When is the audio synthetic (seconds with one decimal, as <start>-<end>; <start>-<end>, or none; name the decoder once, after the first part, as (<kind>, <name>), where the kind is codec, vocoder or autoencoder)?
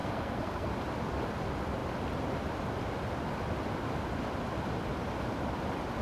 0.0-0.7 (codec, SNAC)